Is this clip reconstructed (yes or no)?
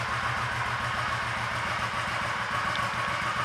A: no